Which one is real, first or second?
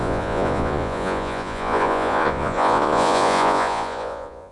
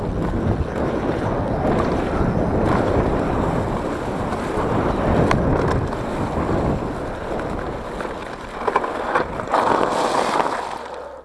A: second